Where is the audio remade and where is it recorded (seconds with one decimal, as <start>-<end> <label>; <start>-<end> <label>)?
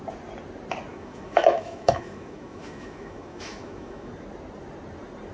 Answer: 0.0-0.9 recorded; 0.9-4.1 remade; 4.1-5.3 recorded